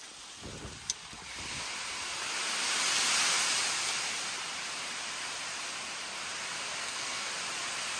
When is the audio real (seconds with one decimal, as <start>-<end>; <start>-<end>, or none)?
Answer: 0.0-6.8; 7.3-8.0